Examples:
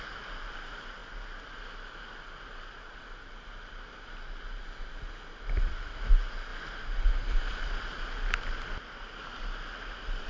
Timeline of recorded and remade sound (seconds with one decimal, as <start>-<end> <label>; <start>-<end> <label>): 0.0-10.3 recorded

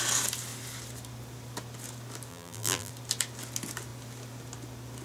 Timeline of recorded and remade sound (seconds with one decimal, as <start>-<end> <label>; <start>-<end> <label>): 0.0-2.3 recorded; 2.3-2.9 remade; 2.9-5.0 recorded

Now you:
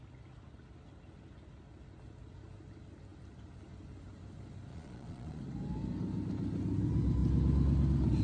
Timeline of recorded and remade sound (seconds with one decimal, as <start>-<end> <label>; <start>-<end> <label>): 0.0-4.7 recorded; 4.7-5.4 remade; 5.4-8.2 recorded

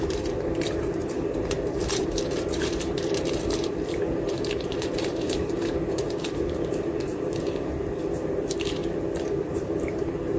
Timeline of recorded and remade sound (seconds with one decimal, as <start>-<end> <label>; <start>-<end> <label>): 0.0-8.8 remade; 8.8-9.5 recorded; 9.5-10.4 remade

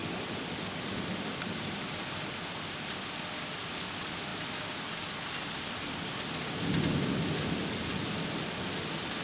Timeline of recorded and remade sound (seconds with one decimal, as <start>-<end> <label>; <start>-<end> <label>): 0.0-2.4 remade; 2.4-9.2 recorded

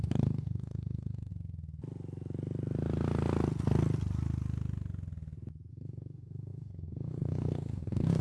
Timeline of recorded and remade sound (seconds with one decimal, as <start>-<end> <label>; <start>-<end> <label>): 0.0-1.3 remade; 1.3-5.7 recorded; 5.7-8.2 remade